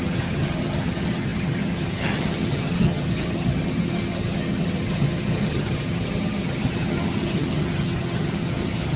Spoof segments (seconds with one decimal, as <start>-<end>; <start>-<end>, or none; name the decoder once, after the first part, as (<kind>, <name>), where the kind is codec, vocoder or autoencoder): 0.0-9.0 (vocoder, HiFi-GAN)